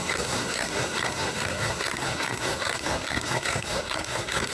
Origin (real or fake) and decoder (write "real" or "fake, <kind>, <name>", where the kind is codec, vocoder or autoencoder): fake, codec, SNAC